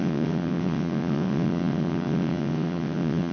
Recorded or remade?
remade